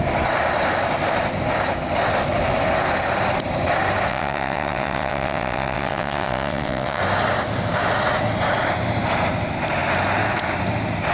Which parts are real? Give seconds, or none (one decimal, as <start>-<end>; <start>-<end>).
0.0-4.1; 7.0-11.1